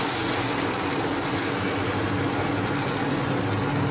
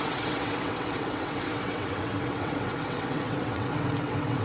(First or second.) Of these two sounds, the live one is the first